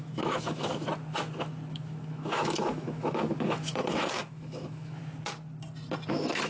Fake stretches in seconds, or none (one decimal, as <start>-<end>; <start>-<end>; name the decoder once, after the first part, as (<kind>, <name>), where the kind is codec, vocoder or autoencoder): 0.0-0.9 (autoencoder, DAC-VAE); 1.7-5.0; 6.1-6.5